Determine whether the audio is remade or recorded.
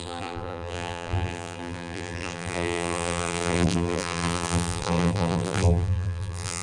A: remade